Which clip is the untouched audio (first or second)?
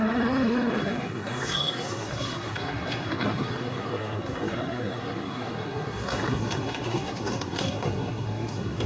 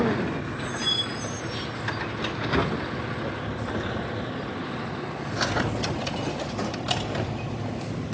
second